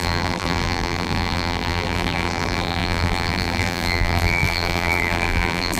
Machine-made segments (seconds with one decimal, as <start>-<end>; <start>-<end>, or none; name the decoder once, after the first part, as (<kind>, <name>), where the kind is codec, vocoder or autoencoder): 0.0-5.8 (vocoder, BigVGAN v2)

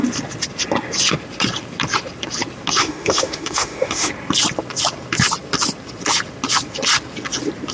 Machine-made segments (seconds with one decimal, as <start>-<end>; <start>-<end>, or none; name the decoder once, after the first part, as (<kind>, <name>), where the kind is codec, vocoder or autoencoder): 2.8-4.1 (autoencoder, DAC-VAE)

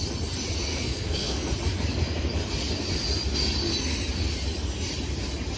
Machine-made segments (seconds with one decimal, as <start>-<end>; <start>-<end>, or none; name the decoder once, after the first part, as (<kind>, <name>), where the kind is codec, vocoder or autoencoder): 0.6-1.5 (codec, SNAC)

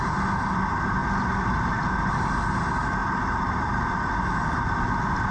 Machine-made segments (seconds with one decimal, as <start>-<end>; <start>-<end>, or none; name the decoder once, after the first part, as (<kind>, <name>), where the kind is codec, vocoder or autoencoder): none

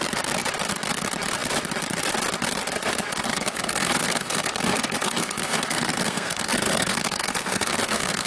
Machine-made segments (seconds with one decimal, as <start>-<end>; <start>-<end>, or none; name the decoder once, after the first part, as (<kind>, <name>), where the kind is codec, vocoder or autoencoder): 3.3-8.3 (codec, SNAC)

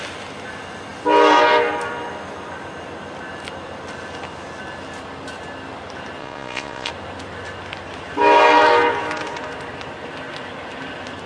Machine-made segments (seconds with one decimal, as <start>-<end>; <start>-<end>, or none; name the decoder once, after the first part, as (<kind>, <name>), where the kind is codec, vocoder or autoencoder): 6.2-6.9 (vocoder, Vocos)